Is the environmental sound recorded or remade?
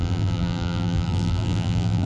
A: remade